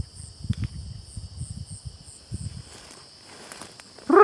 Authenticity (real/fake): real